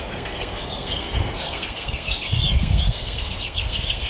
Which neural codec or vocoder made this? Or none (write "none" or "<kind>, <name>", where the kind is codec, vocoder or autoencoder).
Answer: codec, SNAC